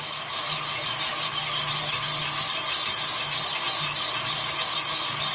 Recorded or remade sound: recorded